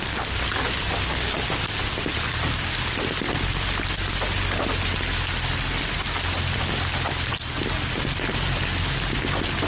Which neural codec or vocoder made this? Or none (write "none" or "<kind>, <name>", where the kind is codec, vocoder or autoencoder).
none